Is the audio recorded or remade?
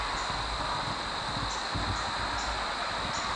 recorded